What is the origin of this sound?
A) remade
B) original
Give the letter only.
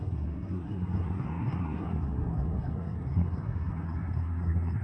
A